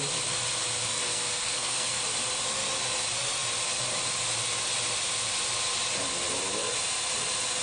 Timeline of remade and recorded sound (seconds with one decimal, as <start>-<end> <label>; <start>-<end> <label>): 0.0-0.9 recorded; 0.9-2.0 remade; 2.0-7.6 recorded